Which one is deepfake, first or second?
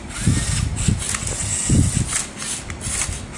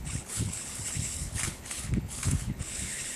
second